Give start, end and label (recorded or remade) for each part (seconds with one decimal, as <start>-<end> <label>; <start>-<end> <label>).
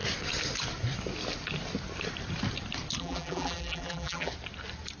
0.0-3.0 recorded; 3.0-4.3 remade; 4.3-5.0 recorded